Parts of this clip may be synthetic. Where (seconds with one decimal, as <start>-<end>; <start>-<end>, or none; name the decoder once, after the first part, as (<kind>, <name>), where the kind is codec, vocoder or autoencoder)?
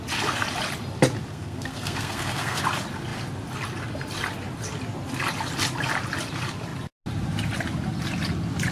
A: 1.3-2.6 (codec, SNAC)